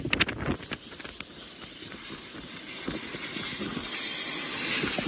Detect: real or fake real